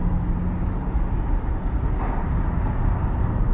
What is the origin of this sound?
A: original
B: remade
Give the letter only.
A